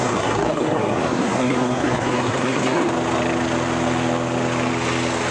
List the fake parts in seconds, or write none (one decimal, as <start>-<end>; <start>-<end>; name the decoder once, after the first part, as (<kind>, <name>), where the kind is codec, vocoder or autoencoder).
0.0-2.9 (codec, SNAC)